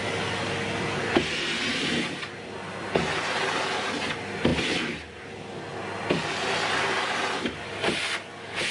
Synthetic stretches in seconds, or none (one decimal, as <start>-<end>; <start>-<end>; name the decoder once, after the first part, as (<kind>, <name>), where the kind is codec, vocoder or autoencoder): none